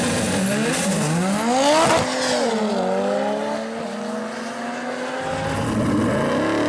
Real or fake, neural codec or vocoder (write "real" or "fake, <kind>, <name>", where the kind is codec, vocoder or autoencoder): real